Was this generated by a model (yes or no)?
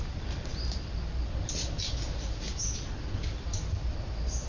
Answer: no